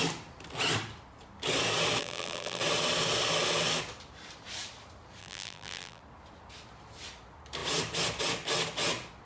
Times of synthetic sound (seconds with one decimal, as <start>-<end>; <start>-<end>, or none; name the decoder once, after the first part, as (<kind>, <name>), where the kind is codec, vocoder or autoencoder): 2.0-2.6 (vocoder, BigVGAN v2); 5.2-6.0

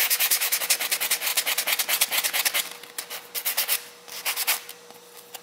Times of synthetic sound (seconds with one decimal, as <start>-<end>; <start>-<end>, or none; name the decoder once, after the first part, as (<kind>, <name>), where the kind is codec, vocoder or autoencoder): 0.0-0.6 (autoencoder, DAC-VAE)